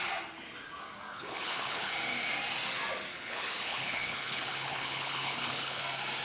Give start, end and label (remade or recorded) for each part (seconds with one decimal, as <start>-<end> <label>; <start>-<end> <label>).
0.0-1.1 recorded; 1.1-1.9 remade; 1.9-3.1 recorded; 3.1-5.8 remade; 5.8-6.2 recorded